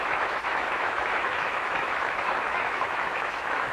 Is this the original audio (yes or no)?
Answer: no